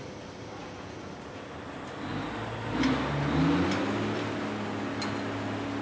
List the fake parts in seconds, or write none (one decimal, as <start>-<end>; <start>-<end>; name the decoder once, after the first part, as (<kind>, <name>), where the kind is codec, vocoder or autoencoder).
0.6-1.1 (vocoder, Vocos)